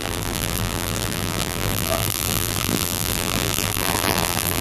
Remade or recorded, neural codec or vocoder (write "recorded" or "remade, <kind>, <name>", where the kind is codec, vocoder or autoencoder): remade, vocoder, BigVGAN v2